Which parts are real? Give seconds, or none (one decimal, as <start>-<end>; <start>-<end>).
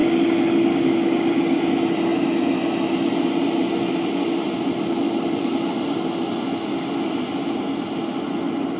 1.6-8.8